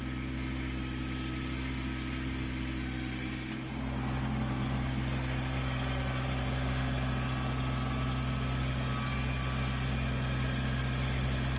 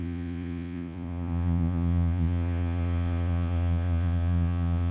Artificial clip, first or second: second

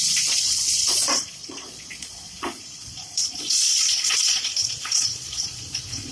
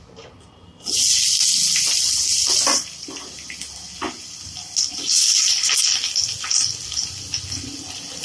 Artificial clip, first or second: first